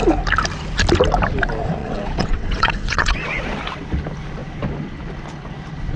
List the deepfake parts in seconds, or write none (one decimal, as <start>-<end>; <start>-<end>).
1.8-3.4